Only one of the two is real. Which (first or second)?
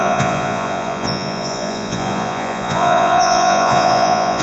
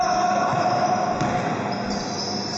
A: second